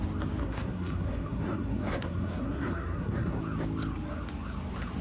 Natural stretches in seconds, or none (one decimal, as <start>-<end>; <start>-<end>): 0.0-0.4; 3.4-5.0